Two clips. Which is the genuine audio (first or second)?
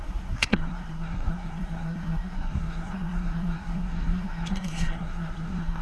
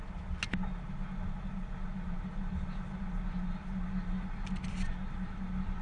second